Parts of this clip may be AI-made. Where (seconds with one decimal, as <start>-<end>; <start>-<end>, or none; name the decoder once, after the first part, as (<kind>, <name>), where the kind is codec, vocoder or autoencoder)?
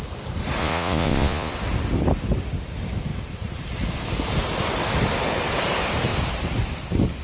0.6-1.5 (vocoder, Vocos)